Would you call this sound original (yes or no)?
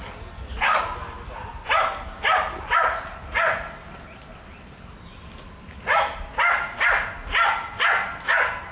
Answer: yes